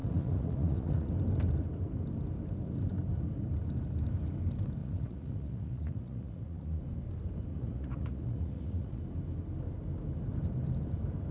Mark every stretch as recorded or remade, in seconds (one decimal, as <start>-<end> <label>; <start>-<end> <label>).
0.0-1.1 remade; 1.1-4.8 recorded; 4.8-6.8 remade; 6.8-7.5 recorded; 7.5-9.0 remade; 9.0-11.3 recorded